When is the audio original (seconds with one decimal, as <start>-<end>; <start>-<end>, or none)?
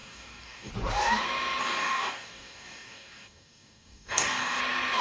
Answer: 0.7-1.6; 4.6-5.0